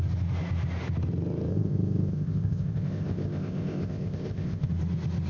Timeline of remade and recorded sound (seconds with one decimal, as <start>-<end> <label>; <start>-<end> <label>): 0.0-1.5 recorded; 1.5-4.7 remade; 4.7-5.3 recorded